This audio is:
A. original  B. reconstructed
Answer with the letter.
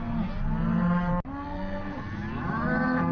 A